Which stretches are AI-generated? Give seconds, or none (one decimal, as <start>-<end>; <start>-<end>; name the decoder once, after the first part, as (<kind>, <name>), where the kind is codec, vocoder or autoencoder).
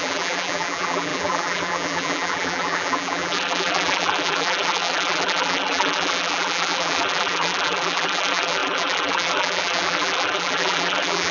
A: 0.0-11.3 (vocoder, BigVGAN v2)